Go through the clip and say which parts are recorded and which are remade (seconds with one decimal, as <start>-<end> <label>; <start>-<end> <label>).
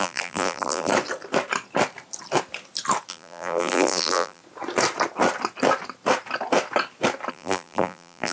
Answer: 0.0-0.9 remade; 0.9-3.1 recorded; 3.1-4.4 remade; 4.4-7.3 recorded; 7.3-8.3 remade